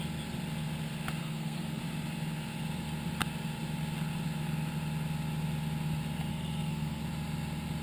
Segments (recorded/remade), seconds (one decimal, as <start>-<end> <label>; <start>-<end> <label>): 0.0-1.2 recorded; 1.2-1.8 remade; 1.8-6.3 recorded; 6.3-7.0 remade; 7.0-7.8 recorded